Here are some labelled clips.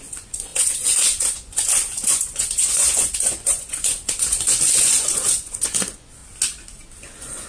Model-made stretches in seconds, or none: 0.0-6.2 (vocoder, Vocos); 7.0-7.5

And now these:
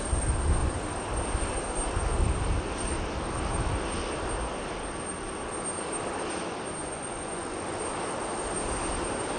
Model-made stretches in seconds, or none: 6.8-7.8 (vocoder, Vocos)

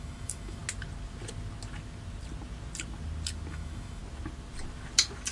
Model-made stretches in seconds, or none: 0.0-0.6 (autoencoder, DAC-VAE); 3.5-4.0

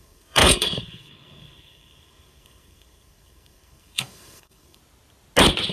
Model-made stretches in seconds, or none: 0.0-4.8 (codec, SNAC)

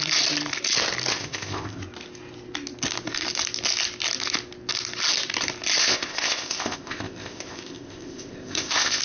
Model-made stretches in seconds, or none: 1.1-1.8 (codec, ZipCodec); 5.8-9.0